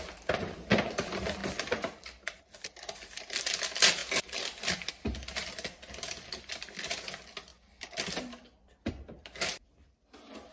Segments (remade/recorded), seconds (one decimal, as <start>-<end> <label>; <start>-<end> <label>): 0.0-1.4 recorded; 1.4-2.4 remade; 2.4-5.4 recorded; 5.4-6.5 remade; 6.5-7.5 recorded; 7.5-8.9 remade; 8.9-10.5 recorded